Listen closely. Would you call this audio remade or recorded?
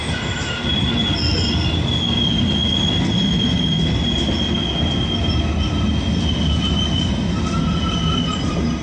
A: recorded